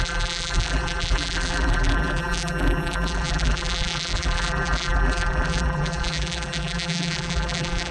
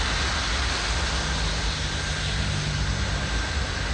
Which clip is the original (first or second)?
second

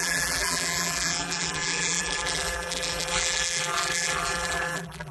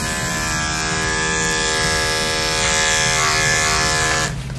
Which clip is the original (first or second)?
second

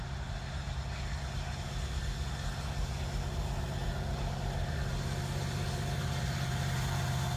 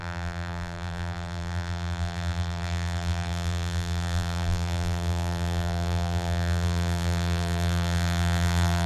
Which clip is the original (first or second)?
first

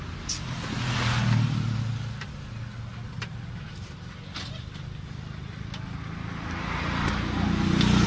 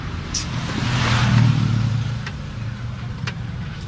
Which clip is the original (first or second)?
first